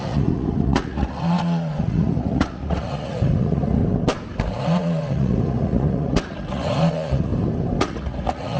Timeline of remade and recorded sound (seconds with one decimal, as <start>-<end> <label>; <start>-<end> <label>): 0.0-3.8 remade; 3.8-4.6 recorded; 4.6-7.3 remade; 7.3-7.8 recorded; 7.8-8.6 remade